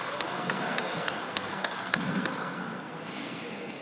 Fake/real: fake